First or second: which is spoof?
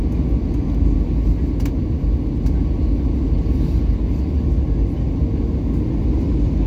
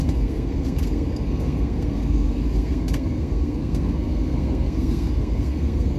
second